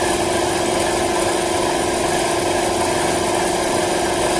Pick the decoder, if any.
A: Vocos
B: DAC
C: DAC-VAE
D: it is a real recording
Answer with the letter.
D